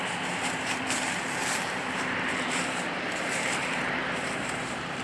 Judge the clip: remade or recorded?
remade